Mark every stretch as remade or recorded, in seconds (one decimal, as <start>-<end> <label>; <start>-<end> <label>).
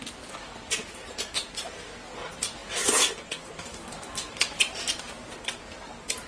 0.0-6.3 recorded